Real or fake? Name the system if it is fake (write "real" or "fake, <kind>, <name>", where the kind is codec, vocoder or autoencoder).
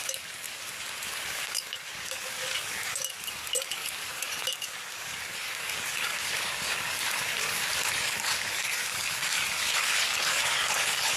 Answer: fake, codec, DAC